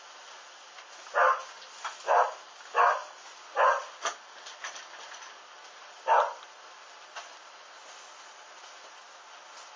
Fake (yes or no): no